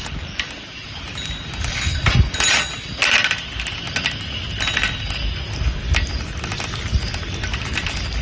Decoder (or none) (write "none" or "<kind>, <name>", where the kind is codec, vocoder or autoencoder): none